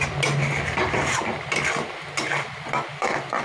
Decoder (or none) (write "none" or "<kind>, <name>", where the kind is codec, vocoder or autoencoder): none